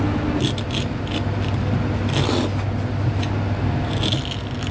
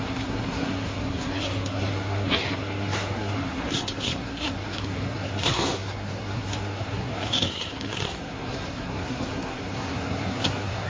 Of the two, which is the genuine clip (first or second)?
first